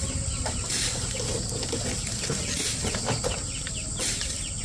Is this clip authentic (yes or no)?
yes